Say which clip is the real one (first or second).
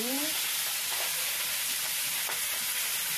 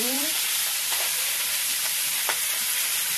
first